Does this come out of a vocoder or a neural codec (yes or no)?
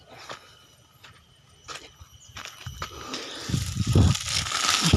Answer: no